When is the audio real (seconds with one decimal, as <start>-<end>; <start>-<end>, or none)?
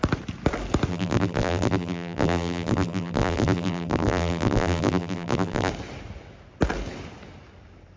0.0-0.9; 5.7-8.0